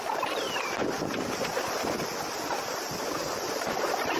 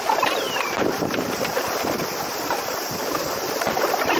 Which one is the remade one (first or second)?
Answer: second